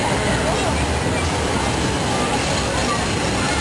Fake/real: real